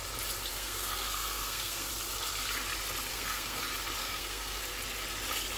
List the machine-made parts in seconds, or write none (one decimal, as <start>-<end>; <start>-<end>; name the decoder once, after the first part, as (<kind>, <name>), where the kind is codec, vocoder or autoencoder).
0.5-1.9 (codec, SNAC); 3.1-3.6; 4.0-4.6